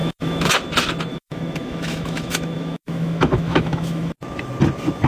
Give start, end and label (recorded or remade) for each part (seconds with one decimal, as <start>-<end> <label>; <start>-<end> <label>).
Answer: 0.0-0.5 remade; 0.5-1.1 recorded; 1.1-4.1 remade; 4.1-5.1 recorded